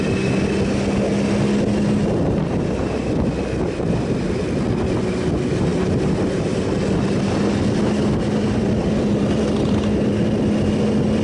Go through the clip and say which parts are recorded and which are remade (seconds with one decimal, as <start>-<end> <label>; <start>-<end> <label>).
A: 0.0-11.2 recorded